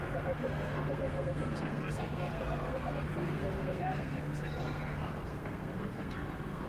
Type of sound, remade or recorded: remade